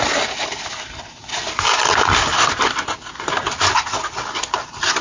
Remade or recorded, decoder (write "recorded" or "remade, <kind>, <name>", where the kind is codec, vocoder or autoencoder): recorded